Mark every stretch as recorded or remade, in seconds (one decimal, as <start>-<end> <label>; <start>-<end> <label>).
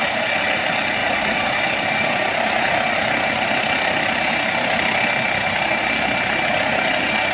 0.0-1.0 recorded; 1.0-1.6 remade; 1.6-7.3 recorded